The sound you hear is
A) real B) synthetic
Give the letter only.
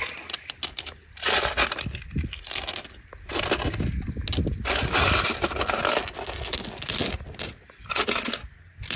A